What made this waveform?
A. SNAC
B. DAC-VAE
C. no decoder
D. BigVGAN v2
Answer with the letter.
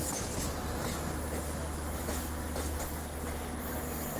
C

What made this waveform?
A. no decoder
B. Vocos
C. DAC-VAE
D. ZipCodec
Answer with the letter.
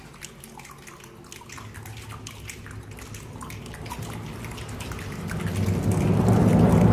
A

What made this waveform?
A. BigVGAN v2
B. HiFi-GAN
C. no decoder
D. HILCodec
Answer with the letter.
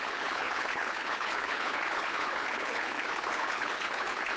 D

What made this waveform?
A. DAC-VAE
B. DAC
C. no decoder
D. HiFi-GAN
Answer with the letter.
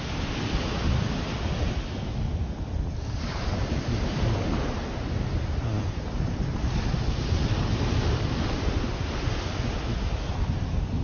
C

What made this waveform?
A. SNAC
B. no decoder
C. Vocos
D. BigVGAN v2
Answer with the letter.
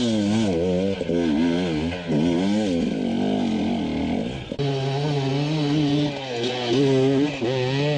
B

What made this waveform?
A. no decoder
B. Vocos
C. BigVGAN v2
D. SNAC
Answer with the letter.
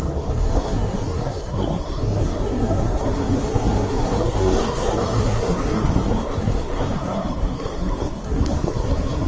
D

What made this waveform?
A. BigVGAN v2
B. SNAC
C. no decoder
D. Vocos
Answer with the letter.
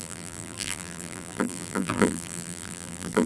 A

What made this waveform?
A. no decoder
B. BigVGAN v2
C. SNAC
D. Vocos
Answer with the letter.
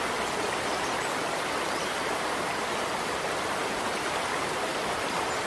B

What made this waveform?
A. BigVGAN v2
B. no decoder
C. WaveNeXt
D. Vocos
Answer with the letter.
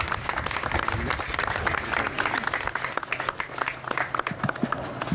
B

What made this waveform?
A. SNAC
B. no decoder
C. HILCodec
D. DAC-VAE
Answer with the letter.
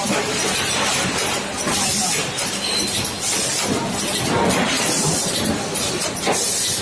B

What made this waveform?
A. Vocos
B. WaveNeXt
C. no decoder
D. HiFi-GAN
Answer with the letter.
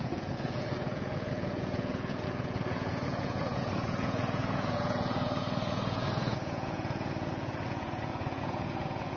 A